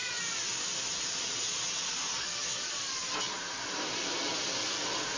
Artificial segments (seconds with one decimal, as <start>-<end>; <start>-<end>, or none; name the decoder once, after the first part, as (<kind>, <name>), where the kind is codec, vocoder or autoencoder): none